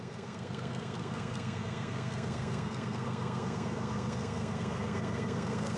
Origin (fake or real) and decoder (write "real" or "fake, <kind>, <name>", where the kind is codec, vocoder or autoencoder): fake, codec, SNAC